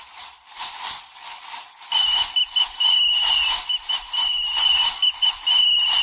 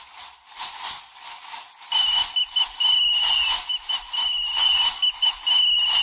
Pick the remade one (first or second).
first